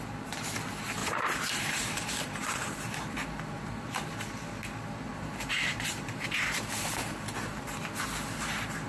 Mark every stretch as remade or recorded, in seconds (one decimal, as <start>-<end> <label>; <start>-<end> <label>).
0.0-1.0 recorded; 1.0-3.1 remade; 3.1-5.1 recorded; 5.1-6.4 remade; 6.4-8.9 recorded